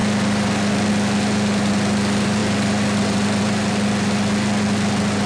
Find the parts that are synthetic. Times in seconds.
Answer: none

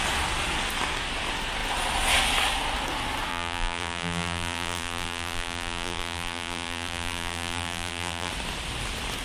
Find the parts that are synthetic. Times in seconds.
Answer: 3.3-8.3 (vocoder, BigVGAN v2)